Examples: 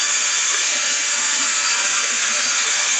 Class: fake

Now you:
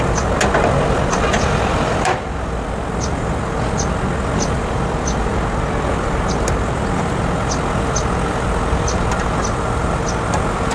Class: real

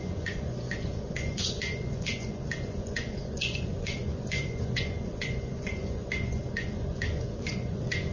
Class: fake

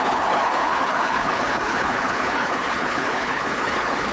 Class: fake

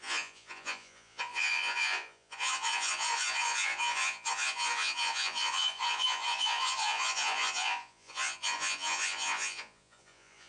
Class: fake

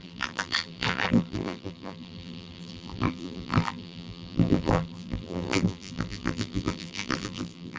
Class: fake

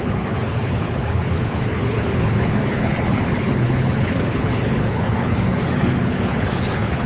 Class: fake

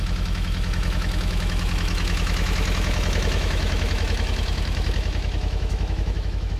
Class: fake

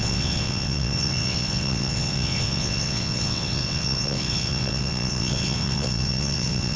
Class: fake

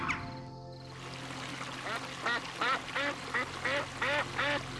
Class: real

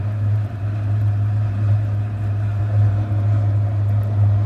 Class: real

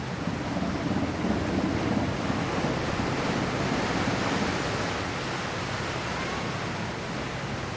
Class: real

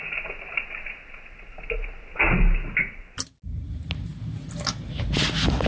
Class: real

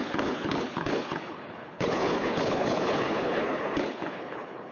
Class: fake